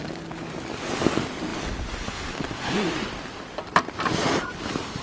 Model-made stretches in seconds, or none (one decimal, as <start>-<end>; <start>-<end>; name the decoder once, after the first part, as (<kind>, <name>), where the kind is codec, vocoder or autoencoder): none